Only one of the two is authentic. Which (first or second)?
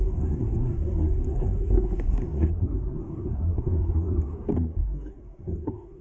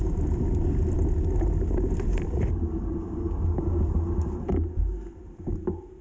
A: second